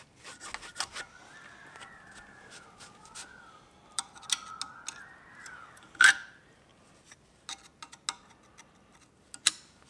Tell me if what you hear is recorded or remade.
recorded